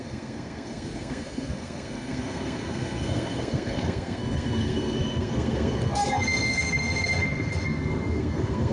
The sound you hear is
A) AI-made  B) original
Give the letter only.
A